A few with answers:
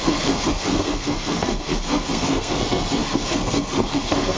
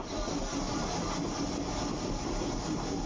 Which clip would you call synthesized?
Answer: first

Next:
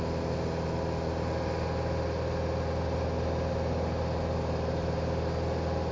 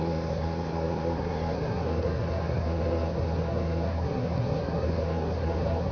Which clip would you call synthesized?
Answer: second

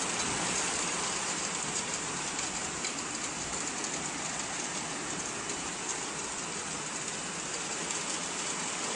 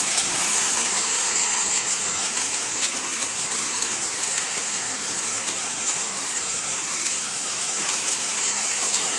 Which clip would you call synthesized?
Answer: second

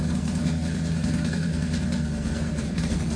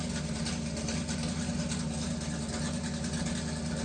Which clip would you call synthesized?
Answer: first